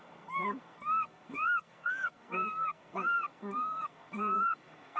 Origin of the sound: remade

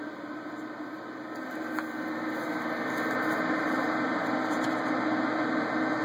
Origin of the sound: recorded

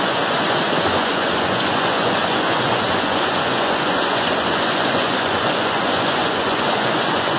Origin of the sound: remade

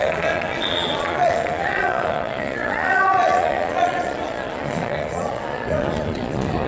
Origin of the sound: remade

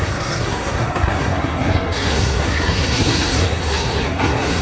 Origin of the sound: remade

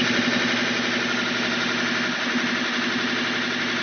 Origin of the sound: recorded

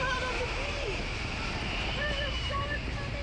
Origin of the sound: recorded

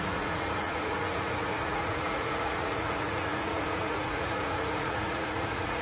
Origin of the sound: remade